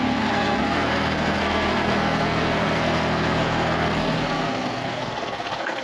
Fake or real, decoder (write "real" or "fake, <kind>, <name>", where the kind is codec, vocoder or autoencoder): fake, codec, SNAC